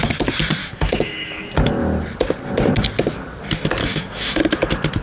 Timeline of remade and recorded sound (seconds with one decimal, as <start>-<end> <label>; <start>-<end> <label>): 0.0-0.6 recorded; 0.6-1.5 remade; 1.5-3.8 recorded; 3.8-4.4 remade; 4.4-5.0 recorded